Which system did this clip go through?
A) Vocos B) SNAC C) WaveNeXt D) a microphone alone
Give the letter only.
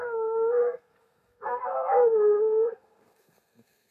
B